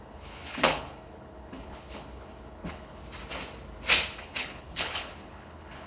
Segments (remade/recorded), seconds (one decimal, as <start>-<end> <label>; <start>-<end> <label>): 0.0-3.0 remade; 3.0-4.2 recorded; 4.2-5.9 remade

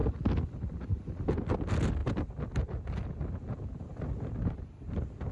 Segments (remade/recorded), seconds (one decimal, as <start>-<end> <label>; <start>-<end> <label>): 0.0-1.2 remade; 1.2-2.0 recorded; 2.0-4.1 remade; 4.1-5.3 recorded

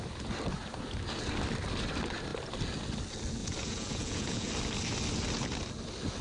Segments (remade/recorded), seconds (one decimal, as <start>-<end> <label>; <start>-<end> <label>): 0.0-3.4 recorded; 3.4-4.5 remade; 4.5-6.2 recorded

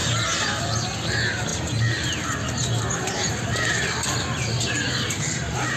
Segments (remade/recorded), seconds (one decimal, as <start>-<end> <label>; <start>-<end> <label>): 0.0-0.6 remade; 0.6-5.8 recorded

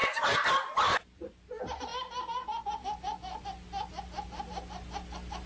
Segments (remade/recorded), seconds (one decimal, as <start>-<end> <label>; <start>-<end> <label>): 0.0-5.5 recorded

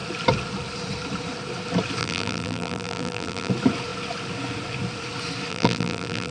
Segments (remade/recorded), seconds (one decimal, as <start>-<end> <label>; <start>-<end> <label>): 0.0-2.0 recorded; 2.0-3.5 remade; 3.5-5.5 recorded; 5.5-6.3 remade

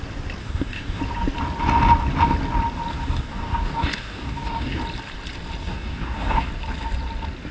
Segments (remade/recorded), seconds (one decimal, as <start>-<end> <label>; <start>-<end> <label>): 0.0-0.4 recorded; 0.4-1.0 remade; 1.0-2.9 recorded; 2.9-4.8 remade; 4.8-5.6 recorded; 5.6-6.5 remade; 6.5-7.5 recorded